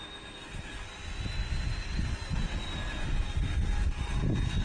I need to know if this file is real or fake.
real